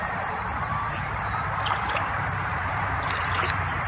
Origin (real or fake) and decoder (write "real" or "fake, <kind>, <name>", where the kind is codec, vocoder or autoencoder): fake, vocoder, BigVGAN v2